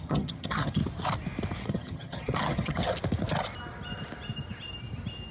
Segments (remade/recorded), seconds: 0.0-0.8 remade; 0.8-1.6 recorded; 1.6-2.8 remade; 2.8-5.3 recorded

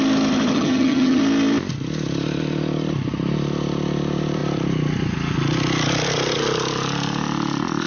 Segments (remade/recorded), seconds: 0.0-0.5 recorded; 0.5-1.2 remade; 1.2-7.9 recorded